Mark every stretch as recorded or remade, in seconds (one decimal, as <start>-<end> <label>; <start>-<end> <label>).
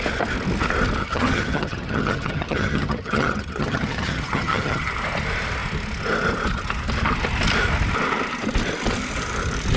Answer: 0.0-1.0 recorded; 1.0-4.9 remade; 4.9-9.8 recorded